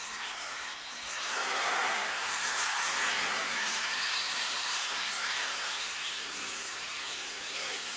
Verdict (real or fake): fake